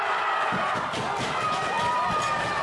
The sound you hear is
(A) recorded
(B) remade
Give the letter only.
A